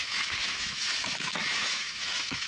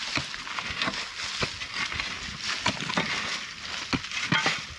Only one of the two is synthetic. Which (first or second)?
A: first